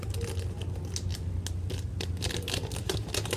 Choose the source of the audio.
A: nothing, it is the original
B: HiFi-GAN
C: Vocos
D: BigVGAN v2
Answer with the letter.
A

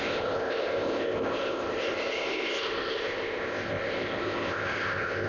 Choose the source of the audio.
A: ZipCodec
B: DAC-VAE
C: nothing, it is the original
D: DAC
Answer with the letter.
A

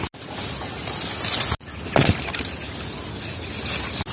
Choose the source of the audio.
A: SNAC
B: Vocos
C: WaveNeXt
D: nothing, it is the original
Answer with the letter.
D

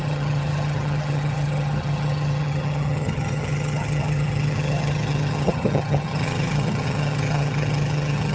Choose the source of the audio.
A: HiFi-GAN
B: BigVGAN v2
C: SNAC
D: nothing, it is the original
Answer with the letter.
A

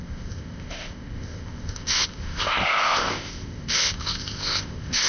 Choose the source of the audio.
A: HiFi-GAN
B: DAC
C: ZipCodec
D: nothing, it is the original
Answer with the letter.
C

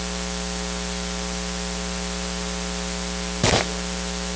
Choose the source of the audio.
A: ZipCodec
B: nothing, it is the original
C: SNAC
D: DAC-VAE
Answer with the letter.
B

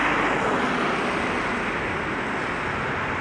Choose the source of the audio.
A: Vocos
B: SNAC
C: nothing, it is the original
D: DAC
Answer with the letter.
C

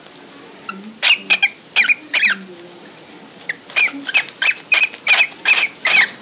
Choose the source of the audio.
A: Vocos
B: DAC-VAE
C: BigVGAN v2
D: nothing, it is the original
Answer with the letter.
D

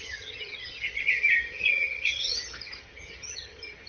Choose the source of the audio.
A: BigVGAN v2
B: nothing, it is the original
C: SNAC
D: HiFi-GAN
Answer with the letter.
D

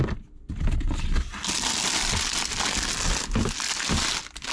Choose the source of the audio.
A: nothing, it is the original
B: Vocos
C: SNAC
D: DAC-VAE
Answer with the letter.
A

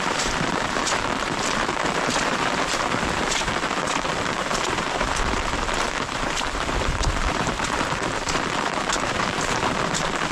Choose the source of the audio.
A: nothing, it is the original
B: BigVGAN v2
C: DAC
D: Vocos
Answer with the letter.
B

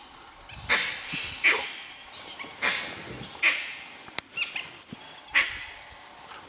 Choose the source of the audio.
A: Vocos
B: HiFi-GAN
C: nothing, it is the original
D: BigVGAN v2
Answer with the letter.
C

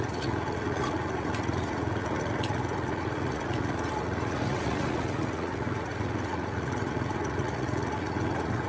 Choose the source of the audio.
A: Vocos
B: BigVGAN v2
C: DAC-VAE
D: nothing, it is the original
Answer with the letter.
A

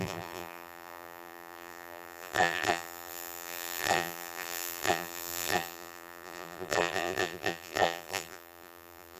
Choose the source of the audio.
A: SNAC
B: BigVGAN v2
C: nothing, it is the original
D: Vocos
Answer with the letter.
B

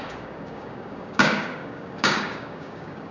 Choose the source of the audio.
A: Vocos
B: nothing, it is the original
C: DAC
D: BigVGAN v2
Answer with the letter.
C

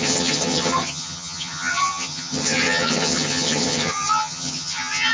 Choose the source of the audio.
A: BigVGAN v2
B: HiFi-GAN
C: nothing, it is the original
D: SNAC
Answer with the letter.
B